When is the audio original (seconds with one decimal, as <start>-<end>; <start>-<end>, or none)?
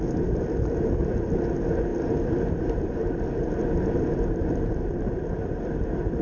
0.0-6.2